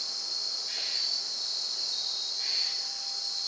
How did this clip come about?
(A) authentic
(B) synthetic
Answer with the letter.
A